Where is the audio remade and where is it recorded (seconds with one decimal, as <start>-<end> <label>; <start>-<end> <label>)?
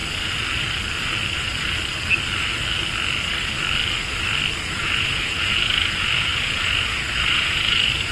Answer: 0.0-4.6 recorded; 4.6-8.1 remade